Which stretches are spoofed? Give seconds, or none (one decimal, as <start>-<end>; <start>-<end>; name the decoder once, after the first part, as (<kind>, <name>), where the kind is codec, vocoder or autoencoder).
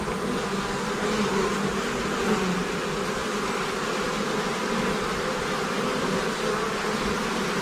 none